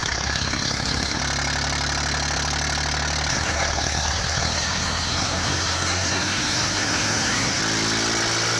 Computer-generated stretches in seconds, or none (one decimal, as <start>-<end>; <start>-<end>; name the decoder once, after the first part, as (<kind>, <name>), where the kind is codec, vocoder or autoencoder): 0.0-1.2 (codec, SNAC); 3.3-7.6